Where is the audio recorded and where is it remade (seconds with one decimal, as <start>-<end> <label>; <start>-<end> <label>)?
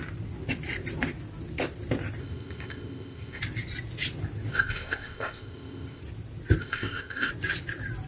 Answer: 0.0-2.2 recorded; 2.2-3.4 remade; 3.4-4.5 recorded; 4.5-6.0 remade; 6.0-6.6 recorded; 6.6-7.3 remade; 7.3-8.1 recorded